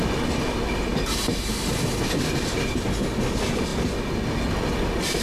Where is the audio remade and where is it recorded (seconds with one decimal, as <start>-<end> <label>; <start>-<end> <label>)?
0.0-5.2 recorded